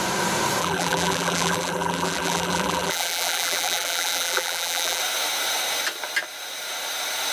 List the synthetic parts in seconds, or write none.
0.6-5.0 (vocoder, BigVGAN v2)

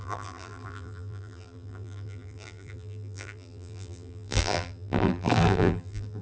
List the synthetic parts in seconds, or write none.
0.0-6.2 (vocoder, BigVGAN v2)